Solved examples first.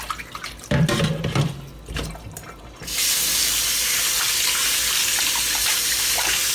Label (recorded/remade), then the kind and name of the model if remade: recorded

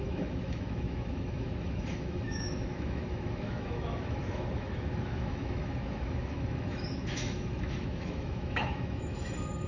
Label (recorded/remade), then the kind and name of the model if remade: remade, autoencoder, DAC-VAE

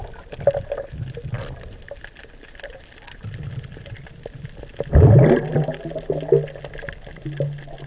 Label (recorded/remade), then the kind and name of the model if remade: recorded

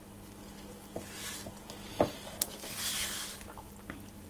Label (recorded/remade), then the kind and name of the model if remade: recorded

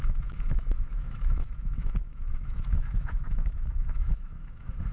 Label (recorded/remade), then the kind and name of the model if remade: remade, autoencoder, DAC-VAE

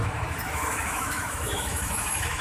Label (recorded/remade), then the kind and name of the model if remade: remade, autoencoder, DAC-VAE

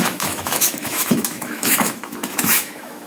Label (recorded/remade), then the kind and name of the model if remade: remade, autoencoder, DAC-VAE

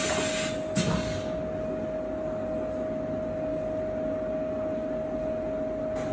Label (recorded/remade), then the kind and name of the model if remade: recorded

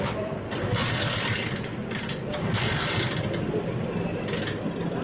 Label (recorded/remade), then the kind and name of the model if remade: recorded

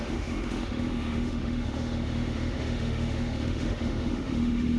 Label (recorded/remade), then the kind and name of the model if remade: remade, autoencoder, DAC-VAE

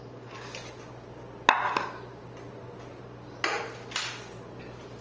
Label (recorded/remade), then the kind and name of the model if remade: recorded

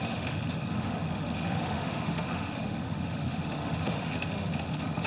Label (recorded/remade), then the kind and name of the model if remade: remade, autoencoder, DAC-VAE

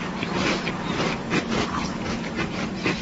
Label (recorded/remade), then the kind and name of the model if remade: recorded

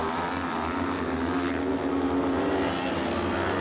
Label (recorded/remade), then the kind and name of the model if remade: recorded